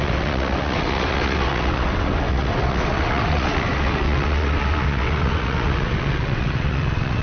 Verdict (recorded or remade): remade